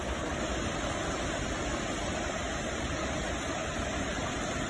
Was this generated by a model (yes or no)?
no